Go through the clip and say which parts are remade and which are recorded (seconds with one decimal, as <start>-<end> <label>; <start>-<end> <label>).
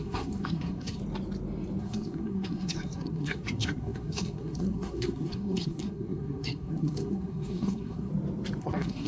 0.0-1.0 remade; 1.0-1.8 recorded; 1.8-8.1 remade; 8.1-8.6 recorded; 8.6-9.1 remade